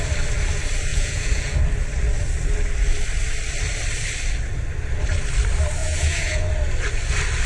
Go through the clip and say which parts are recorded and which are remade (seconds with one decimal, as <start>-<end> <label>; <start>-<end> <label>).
0.0-0.9 recorded; 0.9-1.6 remade; 1.6-5.8 recorded; 5.8-6.5 remade; 6.5-7.5 recorded